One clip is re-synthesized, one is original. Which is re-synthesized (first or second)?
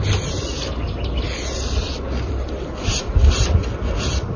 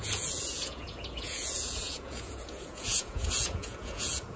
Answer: second